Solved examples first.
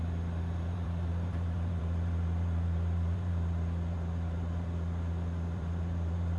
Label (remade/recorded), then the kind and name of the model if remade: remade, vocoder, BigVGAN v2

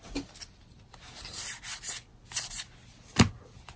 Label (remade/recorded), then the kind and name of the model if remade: recorded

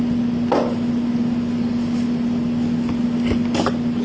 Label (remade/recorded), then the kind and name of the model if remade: recorded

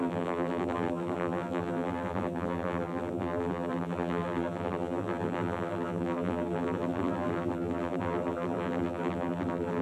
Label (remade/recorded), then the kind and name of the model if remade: remade, vocoder, BigVGAN v2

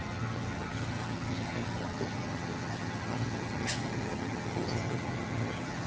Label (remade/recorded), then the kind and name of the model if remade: remade, vocoder, HiFi-GAN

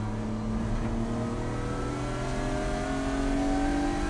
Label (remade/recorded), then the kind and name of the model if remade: recorded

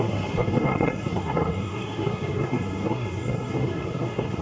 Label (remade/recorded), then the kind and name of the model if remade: remade, codec, SNAC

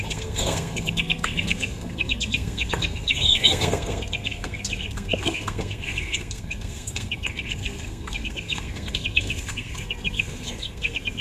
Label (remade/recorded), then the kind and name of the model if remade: remade, codec, SNAC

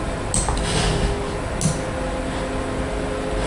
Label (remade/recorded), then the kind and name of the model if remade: recorded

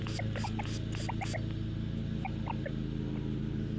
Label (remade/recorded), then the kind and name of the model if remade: recorded